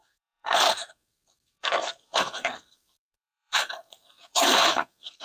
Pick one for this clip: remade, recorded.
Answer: remade